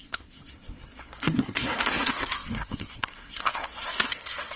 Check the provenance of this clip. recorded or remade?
remade